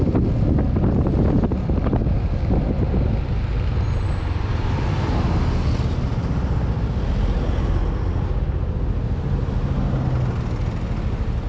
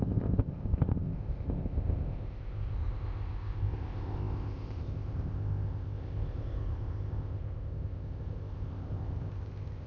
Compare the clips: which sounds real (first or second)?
first